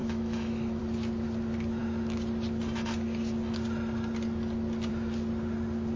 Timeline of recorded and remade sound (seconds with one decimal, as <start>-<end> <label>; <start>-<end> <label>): 0.0-0.8 remade; 0.8-6.0 recorded